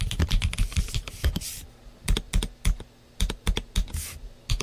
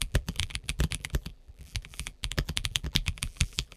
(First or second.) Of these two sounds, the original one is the first